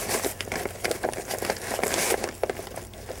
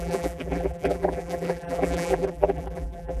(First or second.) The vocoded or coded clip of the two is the second